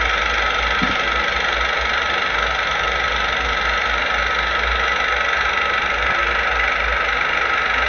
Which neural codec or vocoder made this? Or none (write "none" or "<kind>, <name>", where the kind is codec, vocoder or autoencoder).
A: none